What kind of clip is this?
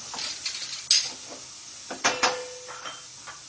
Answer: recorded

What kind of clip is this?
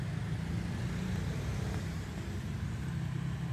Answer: recorded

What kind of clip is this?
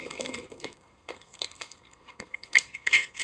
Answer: remade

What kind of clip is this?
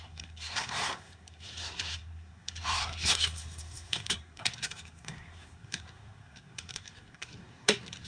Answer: remade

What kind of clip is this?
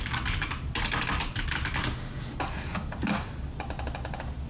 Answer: recorded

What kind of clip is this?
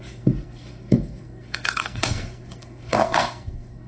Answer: remade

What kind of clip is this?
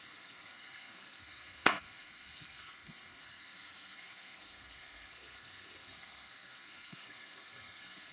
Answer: remade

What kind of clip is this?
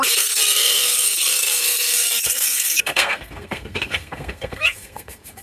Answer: remade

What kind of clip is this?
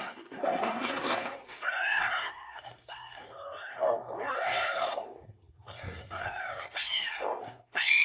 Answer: remade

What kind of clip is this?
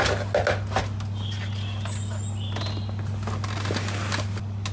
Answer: recorded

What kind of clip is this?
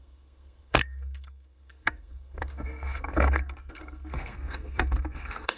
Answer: remade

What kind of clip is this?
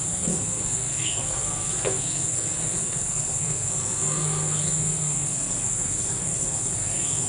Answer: remade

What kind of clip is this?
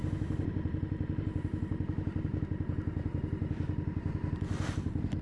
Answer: recorded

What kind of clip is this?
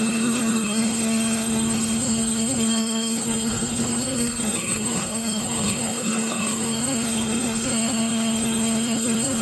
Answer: remade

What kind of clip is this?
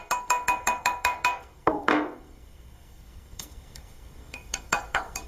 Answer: remade